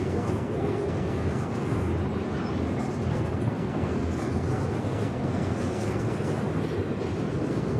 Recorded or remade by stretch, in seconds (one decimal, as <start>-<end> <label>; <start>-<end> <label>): 0.0-1.9 remade; 1.9-3.1 recorded; 3.1-6.5 remade; 6.5-7.3 recorded; 7.3-7.8 remade

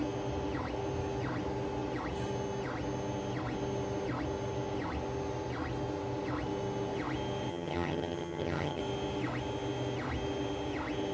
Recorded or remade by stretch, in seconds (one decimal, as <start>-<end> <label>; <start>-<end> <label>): 0.0-7.5 recorded; 7.5-8.8 remade; 8.8-11.1 recorded

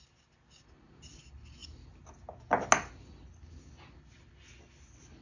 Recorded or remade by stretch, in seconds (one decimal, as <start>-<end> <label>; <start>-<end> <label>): 0.0-5.2 recorded

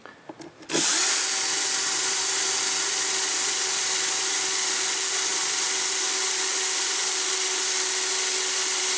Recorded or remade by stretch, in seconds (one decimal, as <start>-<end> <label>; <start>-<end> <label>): 0.0-9.0 recorded

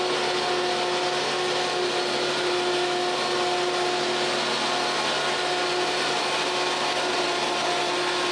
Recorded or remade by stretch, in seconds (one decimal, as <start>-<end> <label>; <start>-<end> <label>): 0.0-8.3 recorded

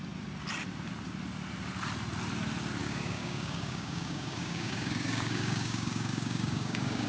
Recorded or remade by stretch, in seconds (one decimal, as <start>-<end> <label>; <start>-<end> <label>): 0.0-2.8 recorded; 2.8-7.1 remade

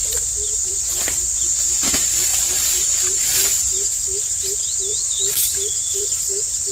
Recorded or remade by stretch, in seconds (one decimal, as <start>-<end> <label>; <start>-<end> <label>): 0.0-1.0 remade; 1.0-3.3 recorded; 3.3-4.3 remade; 4.3-4.9 recorded; 4.9-6.2 remade; 6.2-6.7 recorded